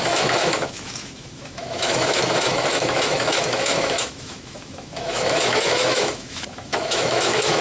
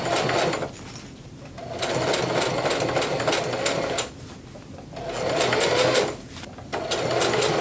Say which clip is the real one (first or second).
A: second